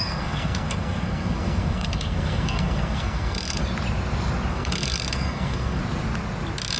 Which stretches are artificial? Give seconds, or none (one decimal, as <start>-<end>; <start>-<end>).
0.0-3.6; 4.5-5.8